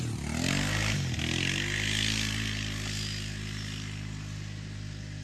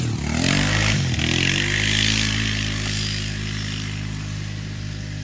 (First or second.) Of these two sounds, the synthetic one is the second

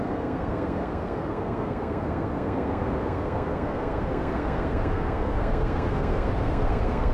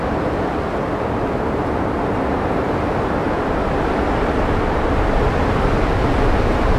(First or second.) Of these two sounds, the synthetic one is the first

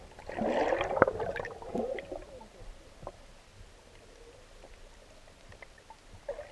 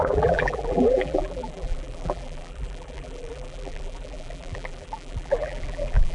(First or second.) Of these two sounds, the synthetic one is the second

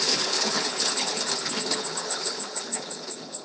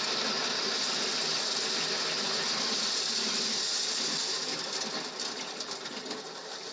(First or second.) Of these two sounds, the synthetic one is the first